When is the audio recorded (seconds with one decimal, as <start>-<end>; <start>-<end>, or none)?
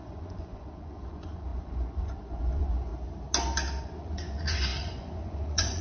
2.9-3.8